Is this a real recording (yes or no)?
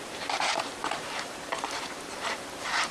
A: no